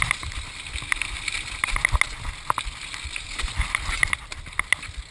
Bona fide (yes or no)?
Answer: yes